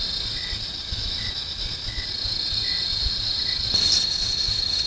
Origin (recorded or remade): recorded